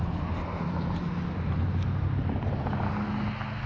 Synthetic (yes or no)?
no